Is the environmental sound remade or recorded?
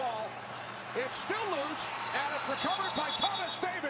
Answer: remade